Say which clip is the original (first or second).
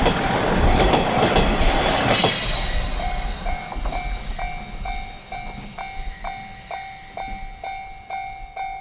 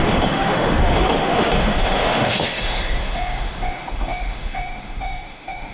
first